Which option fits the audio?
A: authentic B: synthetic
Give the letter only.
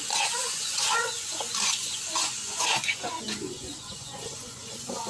B